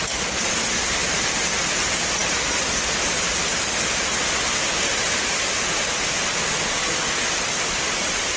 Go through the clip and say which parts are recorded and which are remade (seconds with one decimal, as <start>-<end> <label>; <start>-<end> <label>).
0.0-3.5 remade; 3.5-4.2 recorded; 4.2-8.4 remade